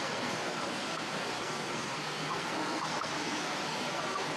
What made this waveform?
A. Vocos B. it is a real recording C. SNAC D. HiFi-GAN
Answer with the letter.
C